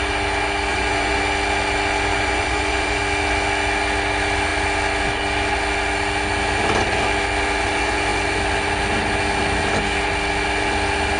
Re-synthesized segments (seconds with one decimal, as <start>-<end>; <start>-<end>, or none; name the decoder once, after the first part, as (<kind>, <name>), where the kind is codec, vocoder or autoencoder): 0.7-1.2 (vocoder, Vocos); 2.1-3.0

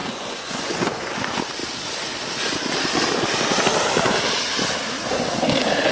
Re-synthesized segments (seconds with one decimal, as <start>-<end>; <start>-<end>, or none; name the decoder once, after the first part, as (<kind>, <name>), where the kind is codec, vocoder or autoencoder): 0.0-1.1 (vocoder, Vocos)

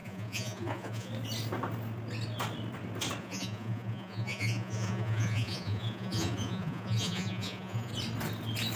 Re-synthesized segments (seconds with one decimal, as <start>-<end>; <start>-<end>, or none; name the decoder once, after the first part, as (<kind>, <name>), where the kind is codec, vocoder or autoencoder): 0.0-1.1 (vocoder, Vocos); 3.2-7.9

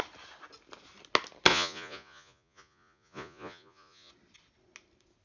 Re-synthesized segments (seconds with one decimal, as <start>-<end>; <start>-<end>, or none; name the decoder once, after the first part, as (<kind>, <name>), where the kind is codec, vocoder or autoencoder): 1.5-4.1 (vocoder, Vocos)

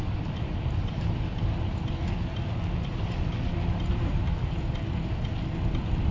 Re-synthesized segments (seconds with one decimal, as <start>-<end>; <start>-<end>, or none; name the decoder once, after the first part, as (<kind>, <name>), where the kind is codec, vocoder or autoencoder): none

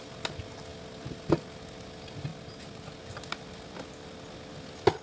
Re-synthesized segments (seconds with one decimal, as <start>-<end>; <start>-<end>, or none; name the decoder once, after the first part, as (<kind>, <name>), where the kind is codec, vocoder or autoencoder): none